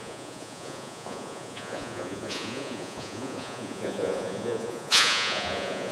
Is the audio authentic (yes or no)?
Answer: no